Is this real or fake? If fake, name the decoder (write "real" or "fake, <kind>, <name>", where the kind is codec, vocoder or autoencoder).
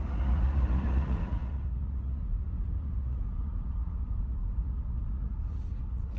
fake, vocoder, Vocos